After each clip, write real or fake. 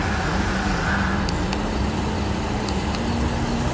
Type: real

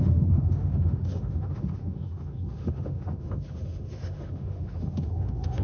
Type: fake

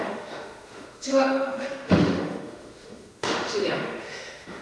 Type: fake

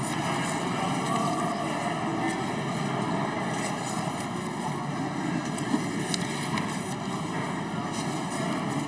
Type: real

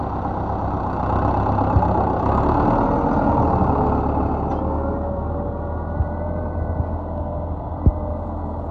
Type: real